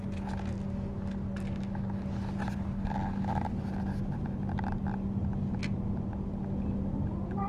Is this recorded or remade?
recorded